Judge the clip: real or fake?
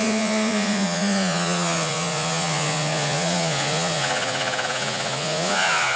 fake